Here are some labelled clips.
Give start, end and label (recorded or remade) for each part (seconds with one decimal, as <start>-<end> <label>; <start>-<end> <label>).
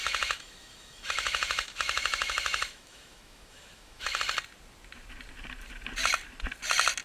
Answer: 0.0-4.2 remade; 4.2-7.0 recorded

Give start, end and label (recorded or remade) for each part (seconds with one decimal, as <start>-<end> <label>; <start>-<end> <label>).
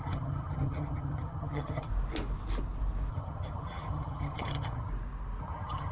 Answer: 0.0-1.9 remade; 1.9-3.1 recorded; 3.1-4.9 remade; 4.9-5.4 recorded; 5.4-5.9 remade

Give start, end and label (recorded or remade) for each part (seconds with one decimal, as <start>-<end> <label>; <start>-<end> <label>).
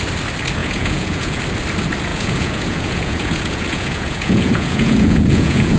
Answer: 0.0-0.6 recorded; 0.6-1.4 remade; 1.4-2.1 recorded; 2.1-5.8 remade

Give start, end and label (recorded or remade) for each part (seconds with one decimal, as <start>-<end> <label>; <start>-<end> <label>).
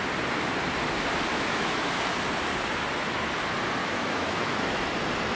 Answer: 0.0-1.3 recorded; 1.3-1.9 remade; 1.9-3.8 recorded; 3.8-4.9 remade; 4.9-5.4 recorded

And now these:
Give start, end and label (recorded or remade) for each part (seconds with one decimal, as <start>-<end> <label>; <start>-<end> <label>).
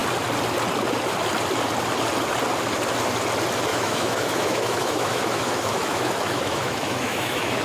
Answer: 0.0-3.7 recorded; 3.7-7.6 remade